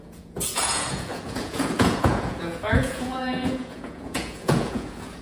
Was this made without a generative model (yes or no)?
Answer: no